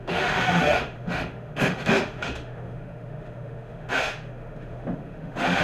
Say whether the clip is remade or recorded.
remade